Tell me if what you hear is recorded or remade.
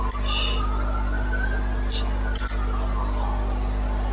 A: recorded